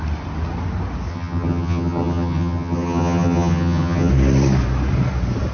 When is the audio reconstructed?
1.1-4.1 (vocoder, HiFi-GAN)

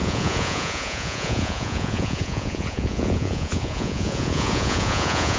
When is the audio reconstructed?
0.0-5.4 (vocoder, Vocos)

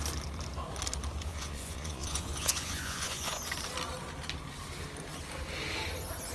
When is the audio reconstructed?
1.3-3.4 (vocoder, Vocos)

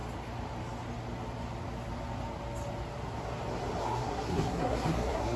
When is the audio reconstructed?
3.8-5.4 (codec, SNAC)

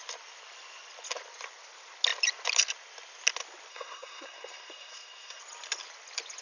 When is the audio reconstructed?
3.7-5.4 (codec, SNAC)

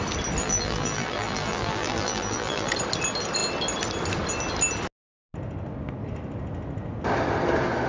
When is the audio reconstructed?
0.4-2.7 (vocoder, BigVGAN v2)

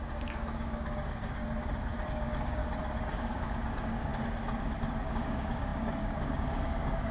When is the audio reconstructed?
0.0-1.4 (codec, DAC); 2.1-2.6; 3.1-4.1; 5.1-7.1

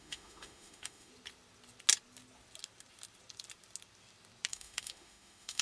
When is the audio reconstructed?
0.0-1.1 (autoencoder, DAC-VAE); 4.5-5.6